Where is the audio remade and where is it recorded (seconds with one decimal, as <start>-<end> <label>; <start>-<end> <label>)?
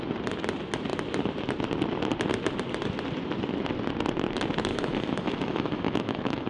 0.0-4.7 recorded; 4.7-6.5 remade